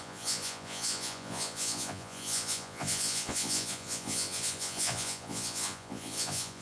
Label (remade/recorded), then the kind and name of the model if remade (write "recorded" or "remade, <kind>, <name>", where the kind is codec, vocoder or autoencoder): remade, vocoder, Vocos